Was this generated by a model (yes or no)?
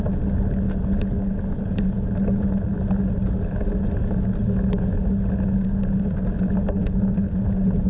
no